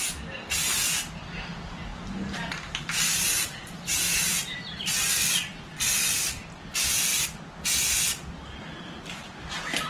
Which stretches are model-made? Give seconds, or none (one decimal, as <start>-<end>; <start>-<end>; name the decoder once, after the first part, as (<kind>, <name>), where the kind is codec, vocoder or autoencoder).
none